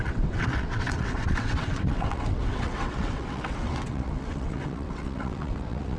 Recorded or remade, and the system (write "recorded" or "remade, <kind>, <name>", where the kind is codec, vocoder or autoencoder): remade, vocoder, WaveNeXt